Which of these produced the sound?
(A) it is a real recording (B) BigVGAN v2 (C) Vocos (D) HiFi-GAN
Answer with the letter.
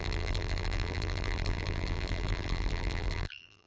B